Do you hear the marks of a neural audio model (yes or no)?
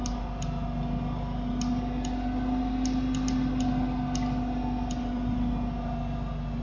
no